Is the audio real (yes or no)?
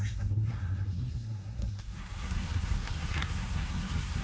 no